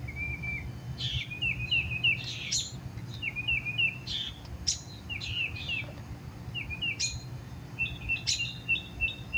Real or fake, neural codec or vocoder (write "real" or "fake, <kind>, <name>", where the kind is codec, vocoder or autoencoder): real